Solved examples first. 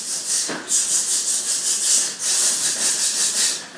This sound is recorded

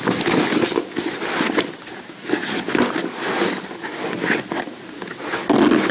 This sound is recorded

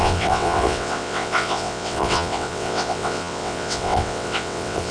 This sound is remade